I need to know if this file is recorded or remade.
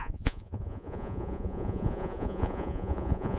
remade